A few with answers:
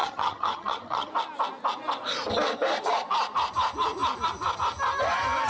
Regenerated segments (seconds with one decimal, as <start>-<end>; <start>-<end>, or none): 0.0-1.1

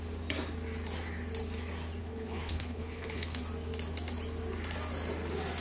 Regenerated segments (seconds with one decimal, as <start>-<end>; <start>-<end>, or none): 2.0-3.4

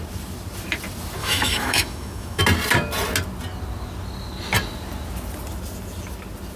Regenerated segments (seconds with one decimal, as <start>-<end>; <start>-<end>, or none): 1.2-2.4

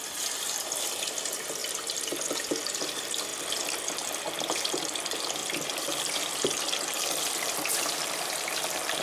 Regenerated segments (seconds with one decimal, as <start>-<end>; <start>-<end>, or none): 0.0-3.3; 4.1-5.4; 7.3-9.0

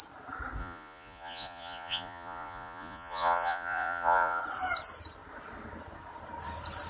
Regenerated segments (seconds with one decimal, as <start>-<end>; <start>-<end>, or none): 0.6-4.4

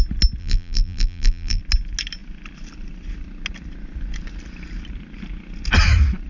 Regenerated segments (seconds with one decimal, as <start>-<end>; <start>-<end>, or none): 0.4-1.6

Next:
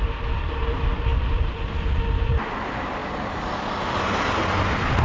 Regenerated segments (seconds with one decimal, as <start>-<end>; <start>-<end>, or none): 1.1-1.7

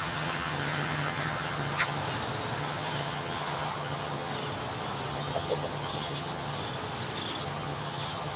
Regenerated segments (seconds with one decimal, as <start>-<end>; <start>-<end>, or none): 0.0-2.0; 2.6-4.3; 5.1-6.6; 7.4-8.4